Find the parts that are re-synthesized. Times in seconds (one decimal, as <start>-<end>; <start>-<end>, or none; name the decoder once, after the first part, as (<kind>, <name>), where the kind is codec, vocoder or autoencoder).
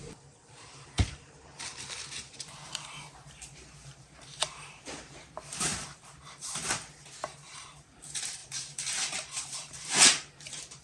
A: 0.0-1.7 (vocoder, BigVGAN v2); 2.3-10.8